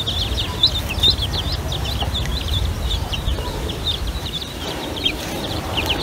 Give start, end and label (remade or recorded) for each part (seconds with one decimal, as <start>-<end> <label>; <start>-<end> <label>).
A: 0.0-2.3 recorded; 2.3-6.0 remade